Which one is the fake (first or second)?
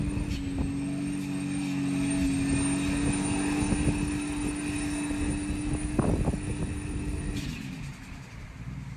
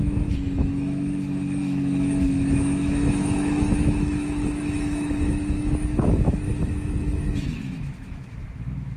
second